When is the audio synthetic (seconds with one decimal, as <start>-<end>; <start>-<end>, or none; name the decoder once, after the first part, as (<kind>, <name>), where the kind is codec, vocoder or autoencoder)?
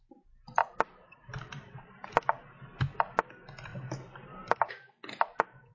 0.6-2.1 (vocoder, BigVGAN v2); 3.7-4.7